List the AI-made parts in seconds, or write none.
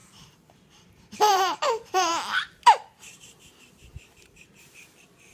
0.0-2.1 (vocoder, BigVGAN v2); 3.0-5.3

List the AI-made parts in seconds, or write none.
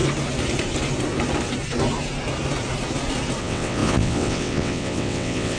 3.4-5.6 (vocoder, WaveNeXt)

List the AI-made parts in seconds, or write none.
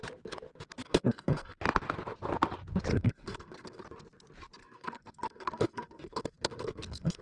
0.8-1.6 (codec, SNAC); 2.9-3.8; 4.6-7.2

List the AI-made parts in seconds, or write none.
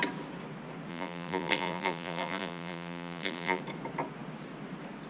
0.9-3.6 (vocoder, BigVGAN v2)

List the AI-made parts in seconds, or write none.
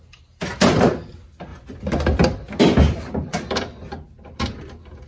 none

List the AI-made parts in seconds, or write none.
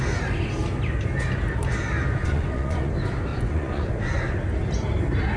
2.2-2.9 (vocoder, Vocos); 3.3-3.9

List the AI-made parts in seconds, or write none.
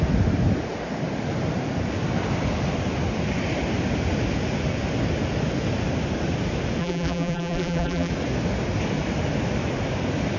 6.8-8.1 (vocoder, BigVGAN v2)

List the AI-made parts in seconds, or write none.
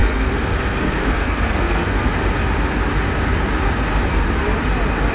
0.0-2.1 (codec, SNAC)